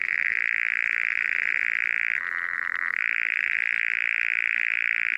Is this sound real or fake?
fake